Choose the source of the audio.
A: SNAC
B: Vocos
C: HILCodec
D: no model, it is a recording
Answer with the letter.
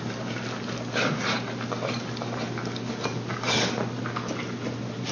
D